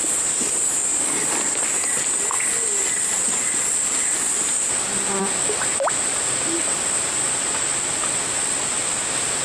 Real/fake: real